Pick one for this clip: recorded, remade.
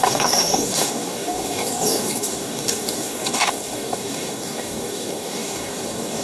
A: remade